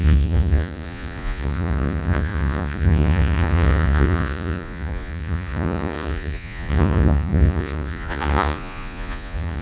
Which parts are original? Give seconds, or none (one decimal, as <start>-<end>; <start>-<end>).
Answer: none